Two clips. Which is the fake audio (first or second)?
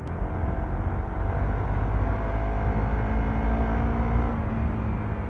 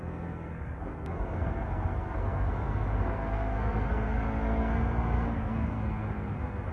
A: second